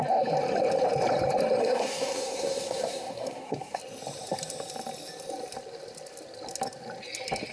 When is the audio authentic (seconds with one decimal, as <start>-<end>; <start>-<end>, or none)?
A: 0.0-1.6; 3.8-7.5